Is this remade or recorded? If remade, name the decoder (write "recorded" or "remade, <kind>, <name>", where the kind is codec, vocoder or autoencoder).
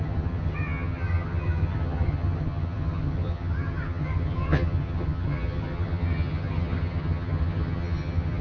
remade, vocoder, HiFi-GAN